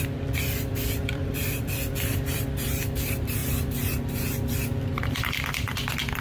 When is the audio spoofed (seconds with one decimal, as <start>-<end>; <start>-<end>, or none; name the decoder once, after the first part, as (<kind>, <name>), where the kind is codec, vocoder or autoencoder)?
0.0-3.4 (vocoder, BigVGAN v2); 4.9-6.2